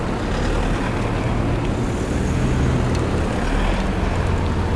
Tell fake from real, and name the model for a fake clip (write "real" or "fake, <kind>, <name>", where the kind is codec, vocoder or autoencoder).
real